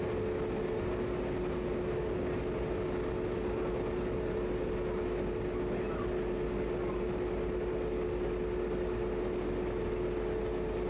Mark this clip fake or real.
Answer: real